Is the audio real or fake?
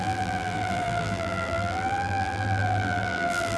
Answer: fake